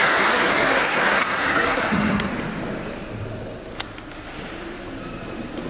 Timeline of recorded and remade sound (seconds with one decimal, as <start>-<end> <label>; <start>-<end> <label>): 0.0-2.3 remade; 2.3-5.7 recorded